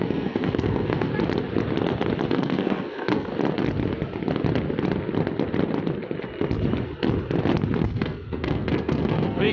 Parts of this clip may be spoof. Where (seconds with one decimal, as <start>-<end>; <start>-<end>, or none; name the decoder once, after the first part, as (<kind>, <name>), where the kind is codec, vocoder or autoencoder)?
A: 0.0-1.1 (codec, SNAC); 2.3-3.3; 7.8-9.5